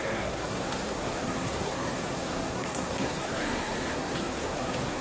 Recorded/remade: remade